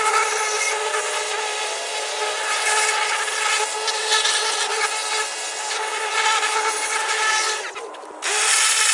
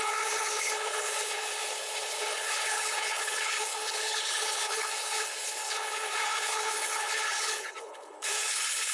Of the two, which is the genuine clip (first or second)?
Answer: first